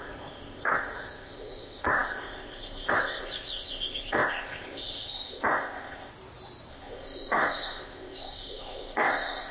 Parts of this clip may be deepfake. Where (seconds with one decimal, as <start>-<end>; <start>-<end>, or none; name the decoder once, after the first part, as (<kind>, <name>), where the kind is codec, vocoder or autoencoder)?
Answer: 0.0-6.1 (codec, ZipCodec); 6.7-9.5